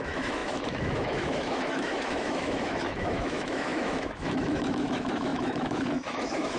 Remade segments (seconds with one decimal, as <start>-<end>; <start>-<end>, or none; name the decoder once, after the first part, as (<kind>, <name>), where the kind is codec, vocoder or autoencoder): 0.0-6.6 (autoencoder, DAC-VAE)